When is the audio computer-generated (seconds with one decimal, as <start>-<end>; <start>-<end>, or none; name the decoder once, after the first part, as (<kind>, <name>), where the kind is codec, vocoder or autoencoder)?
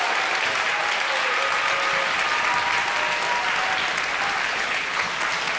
4.4-5.1 (codec, HILCodec)